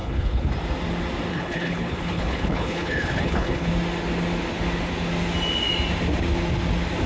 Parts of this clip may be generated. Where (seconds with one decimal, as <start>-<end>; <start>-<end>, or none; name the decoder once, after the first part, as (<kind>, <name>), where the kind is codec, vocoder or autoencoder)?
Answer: 0.0-0.5 (codec, HILCodec); 1.3-3.7